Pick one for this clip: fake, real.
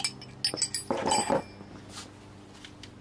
real